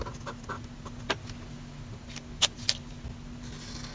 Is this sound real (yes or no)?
yes